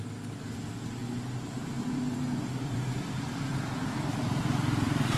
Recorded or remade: remade